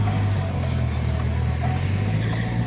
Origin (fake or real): real